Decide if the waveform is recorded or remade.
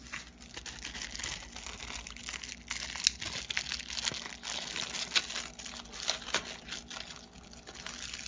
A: recorded